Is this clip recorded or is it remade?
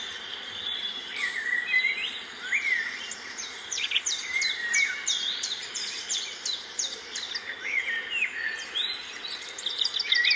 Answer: remade